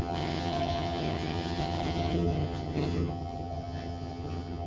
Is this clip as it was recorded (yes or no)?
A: no